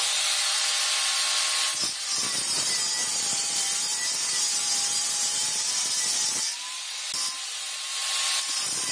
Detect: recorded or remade recorded